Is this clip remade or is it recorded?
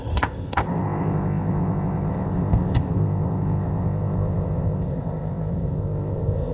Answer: remade